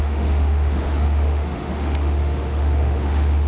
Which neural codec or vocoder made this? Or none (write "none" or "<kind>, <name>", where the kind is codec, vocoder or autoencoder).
autoencoder, DAC-VAE